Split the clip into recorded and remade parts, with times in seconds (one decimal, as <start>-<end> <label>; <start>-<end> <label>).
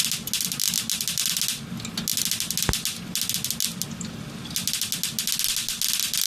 0.0-6.3 recorded